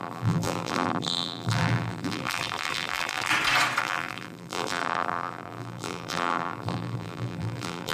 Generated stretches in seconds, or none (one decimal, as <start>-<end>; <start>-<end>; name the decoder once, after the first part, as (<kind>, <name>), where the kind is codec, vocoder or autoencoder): 0.0-3.3 (vocoder, BigVGAN v2); 3.8-7.9